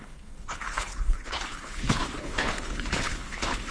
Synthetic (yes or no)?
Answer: yes